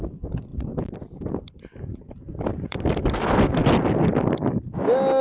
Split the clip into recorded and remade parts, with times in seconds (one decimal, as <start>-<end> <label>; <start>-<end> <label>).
0.0-0.5 recorded; 0.5-3.6 remade; 3.6-5.2 recorded